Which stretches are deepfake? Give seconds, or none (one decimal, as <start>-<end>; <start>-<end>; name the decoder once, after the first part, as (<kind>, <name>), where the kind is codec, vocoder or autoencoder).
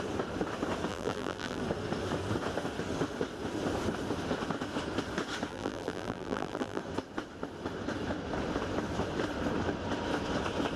0.9-1.6 (vocoder, BigVGAN v2); 5.5-6.8